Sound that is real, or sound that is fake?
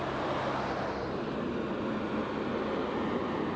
real